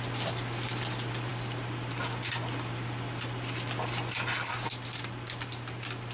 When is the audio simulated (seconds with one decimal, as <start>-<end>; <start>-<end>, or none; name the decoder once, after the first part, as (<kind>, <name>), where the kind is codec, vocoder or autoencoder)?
none